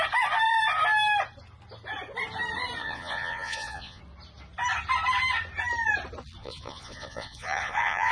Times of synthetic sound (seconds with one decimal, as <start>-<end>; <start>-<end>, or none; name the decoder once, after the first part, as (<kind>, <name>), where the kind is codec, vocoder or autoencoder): 2.8-4.0 (vocoder, Vocos); 6.4-8.1